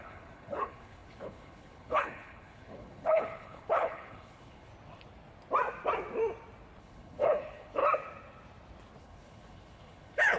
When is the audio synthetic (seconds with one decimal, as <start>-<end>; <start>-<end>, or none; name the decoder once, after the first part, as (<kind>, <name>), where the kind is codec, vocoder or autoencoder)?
0.0-4.7 (codec, HILCodec); 6.8-7.8; 9.0-10.4